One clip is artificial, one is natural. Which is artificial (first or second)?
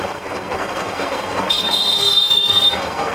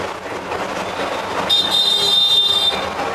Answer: first